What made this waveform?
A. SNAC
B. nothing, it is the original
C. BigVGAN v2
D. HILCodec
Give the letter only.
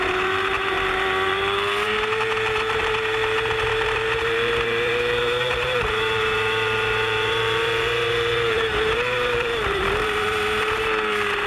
C